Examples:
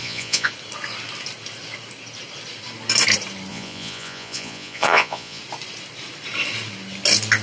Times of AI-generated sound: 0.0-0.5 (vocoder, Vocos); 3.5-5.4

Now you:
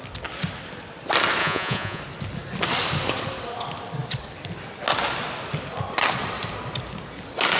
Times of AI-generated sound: 1.4-2.0 (vocoder, Vocos)

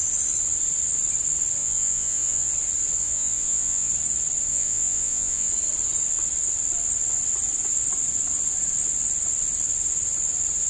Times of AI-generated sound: 1.6-2.5 (vocoder, Vocos); 3.0-3.9; 4.5-5.5

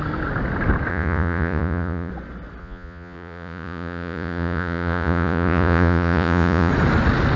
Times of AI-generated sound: 0.9-2.1 (vocoder, Vocos); 2.6-6.7

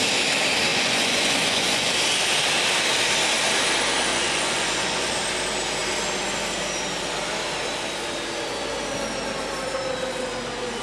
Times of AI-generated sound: 0.7-1.9 (vocoder, Vocos); 4.1-5.1

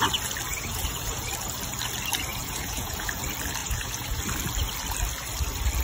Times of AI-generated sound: 0.5-1.3 (vocoder, Vocos); 2.3-3.2; 3.6-4.2

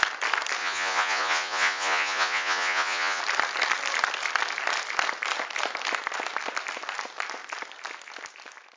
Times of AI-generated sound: 0.6-3.2 (vocoder, Vocos)

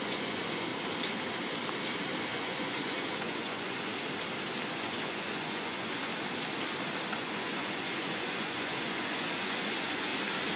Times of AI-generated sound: 0.0-0.7 (vocoder, Vocos); 2.3-3.9; 4.7-6.1; 7.1-10.1